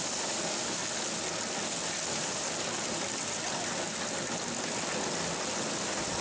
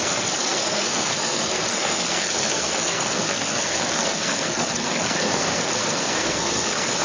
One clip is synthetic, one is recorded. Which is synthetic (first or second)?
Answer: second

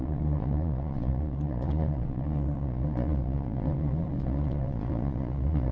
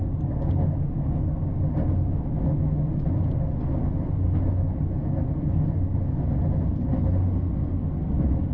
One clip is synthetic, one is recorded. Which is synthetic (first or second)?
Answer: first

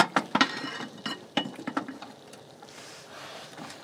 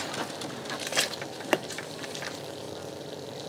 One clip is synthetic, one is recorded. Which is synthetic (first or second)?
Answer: first